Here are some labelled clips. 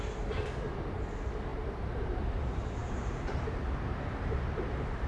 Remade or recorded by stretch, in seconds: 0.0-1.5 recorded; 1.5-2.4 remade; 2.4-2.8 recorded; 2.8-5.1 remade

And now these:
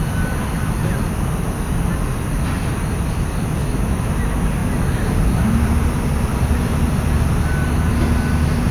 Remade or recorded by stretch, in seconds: 0.0-3.6 recorded; 3.6-4.1 remade; 4.1-8.7 recorded

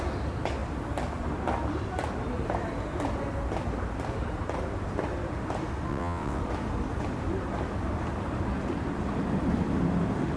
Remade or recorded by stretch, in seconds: 0.0-5.9 recorded; 5.9-6.4 remade; 6.4-10.4 recorded

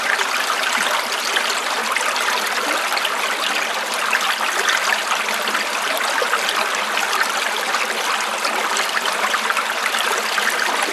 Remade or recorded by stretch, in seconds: 0.0-10.9 recorded